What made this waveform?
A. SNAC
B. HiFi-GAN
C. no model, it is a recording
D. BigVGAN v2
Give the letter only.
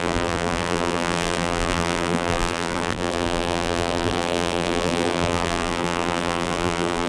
D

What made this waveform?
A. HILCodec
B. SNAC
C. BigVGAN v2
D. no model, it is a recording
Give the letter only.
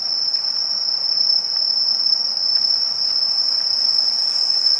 C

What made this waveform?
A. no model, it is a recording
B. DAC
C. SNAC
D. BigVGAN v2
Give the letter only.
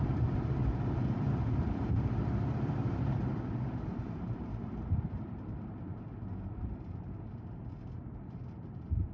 D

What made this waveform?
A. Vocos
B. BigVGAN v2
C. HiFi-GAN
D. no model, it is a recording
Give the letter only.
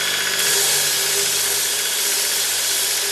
D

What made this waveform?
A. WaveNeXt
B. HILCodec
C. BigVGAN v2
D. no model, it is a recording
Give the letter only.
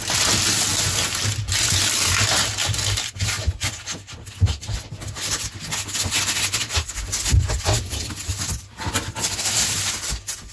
D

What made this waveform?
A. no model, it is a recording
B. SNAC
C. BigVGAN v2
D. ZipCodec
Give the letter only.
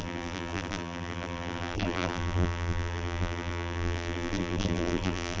C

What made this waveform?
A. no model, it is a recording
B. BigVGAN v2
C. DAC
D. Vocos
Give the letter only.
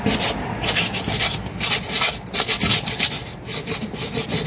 B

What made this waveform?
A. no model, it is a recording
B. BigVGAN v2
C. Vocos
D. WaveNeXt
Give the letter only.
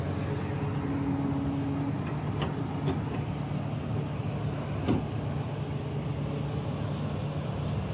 A